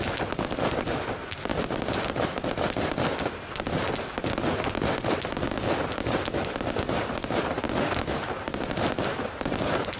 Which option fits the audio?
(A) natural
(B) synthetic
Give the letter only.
A